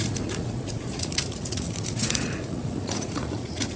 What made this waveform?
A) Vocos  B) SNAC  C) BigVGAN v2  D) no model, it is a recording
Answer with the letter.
A